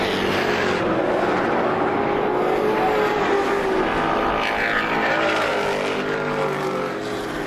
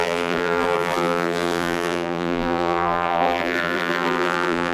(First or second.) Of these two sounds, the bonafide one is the first